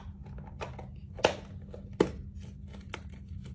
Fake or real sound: real